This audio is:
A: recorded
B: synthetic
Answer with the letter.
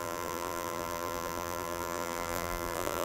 B